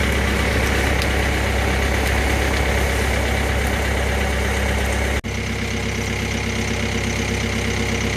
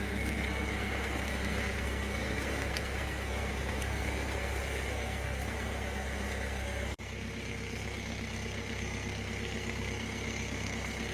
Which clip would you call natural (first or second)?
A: first